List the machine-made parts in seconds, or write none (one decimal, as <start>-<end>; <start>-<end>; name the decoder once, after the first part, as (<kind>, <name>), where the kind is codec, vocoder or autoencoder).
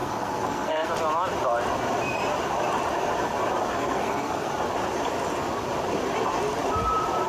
0.0-0.9 (codec, SNAC); 3.7-4.5